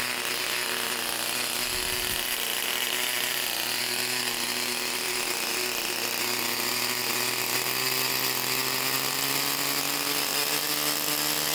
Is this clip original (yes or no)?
yes